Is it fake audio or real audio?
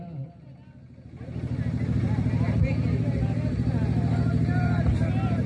real